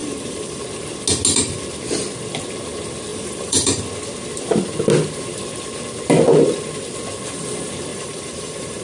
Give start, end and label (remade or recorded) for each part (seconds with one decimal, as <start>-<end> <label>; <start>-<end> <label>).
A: 0.0-0.6 remade; 0.6-3.1 recorded; 3.1-3.8 remade; 3.8-7.9 recorded; 7.9-8.8 remade

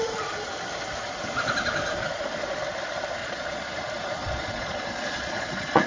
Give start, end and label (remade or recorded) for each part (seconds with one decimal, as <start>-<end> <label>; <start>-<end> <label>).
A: 0.0-3.2 recorded; 3.2-3.8 remade; 3.8-4.2 recorded; 4.2-5.9 remade